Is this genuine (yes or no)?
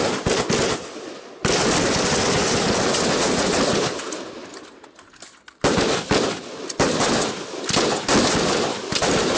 yes